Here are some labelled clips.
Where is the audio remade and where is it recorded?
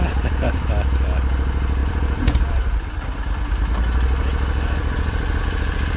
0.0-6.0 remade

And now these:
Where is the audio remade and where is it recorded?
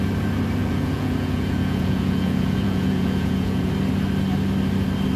0.0-0.6 recorded; 0.6-3.7 remade; 3.7-5.2 recorded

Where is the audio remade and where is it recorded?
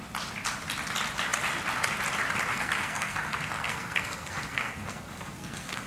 0.0-2.5 recorded; 2.5-5.9 remade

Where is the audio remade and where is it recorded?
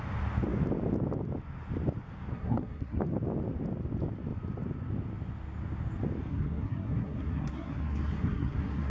0.0-2.3 recorded; 2.3-3.0 remade; 3.0-6.3 recorded; 6.3-8.9 remade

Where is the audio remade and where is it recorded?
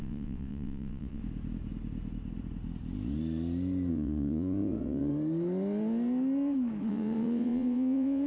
0.0-1.2 remade; 1.2-3.9 recorded; 3.9-5.1 remade; 5.1-6.9 recorded; 6.9-8.3 remade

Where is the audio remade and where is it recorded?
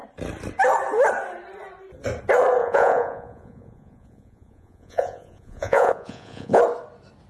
0.0-2.6 recorded; 2.6-6.6 remade; 6.6-7.3 recorded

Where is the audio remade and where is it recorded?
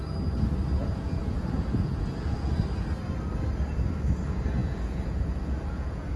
0.0-0.8 recorded; 0.8-2.6 remade; 2.6-4.6 recorded; 4.6-6.2 remade